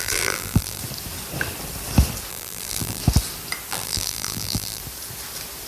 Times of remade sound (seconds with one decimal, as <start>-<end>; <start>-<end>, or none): 0.0-0.8; 2.3-3.0; 3.7-4.8